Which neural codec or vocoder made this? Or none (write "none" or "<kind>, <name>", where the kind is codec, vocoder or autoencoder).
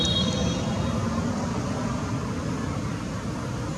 none